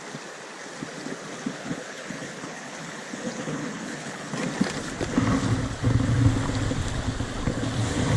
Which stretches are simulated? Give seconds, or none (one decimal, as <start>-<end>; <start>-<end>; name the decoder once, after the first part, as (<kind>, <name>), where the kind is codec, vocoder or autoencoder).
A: 1.6-4.3 (codec, HILCodec)